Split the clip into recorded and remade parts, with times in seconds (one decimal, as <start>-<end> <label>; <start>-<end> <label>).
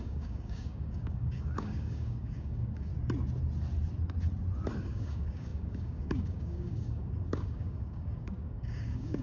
0.0-2.9 remade; 2.9-4.8 recorded; 4.8-9.2 remade